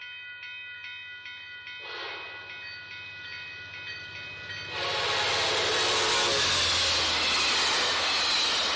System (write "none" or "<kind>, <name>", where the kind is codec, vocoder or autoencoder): none